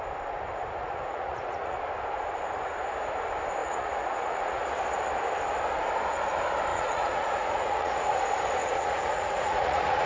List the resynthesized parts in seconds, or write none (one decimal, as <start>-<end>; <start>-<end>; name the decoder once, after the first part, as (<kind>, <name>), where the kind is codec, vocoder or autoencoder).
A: 0.8-1.8 (vocoder, Vocos); 3.6-4.6; 6.7-8.2; 8.6-10.1